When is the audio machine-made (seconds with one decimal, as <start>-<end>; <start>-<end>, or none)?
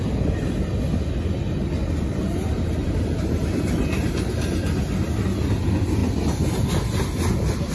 1.8-4.3